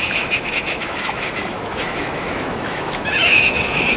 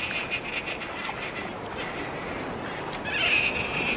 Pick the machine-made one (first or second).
first